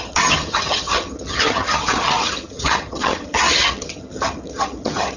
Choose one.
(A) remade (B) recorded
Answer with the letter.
A